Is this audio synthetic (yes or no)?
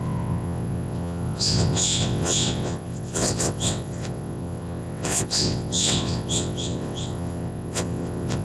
yes